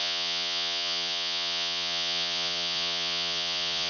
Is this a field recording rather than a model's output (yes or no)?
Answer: no